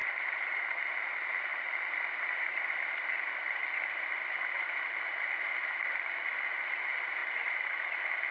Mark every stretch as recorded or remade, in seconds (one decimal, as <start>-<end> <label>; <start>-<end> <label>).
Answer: 0.0-0.8 remade; 0.8-1.5 recorded; 1.5-6.4 remade; 6.4-7.2 recorded; 7.2-7.8 remade; 7.8-8.3 recorded